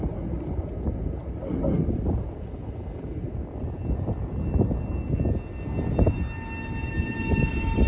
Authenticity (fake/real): real